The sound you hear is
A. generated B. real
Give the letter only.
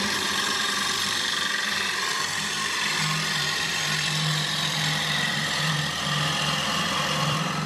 A